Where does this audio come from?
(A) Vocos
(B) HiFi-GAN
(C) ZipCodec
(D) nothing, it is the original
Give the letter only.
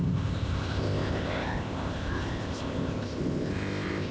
C